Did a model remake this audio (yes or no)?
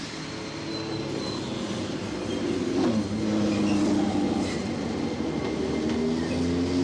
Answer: no